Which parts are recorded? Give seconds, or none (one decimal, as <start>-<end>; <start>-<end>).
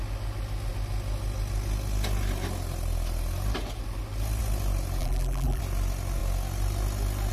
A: 0.0-5.0; 5.6-7.3